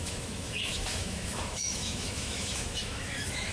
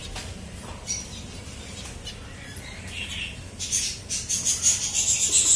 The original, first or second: second